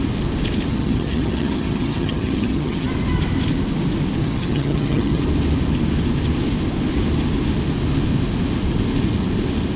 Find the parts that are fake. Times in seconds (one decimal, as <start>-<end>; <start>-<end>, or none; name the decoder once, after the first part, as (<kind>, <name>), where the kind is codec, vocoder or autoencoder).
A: 0.7-2.9 (vocoder, HiFi-GAN); 4.2-5.2